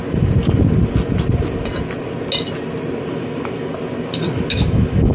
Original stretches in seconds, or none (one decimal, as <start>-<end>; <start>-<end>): 0.0-3.1; 3.7-4.5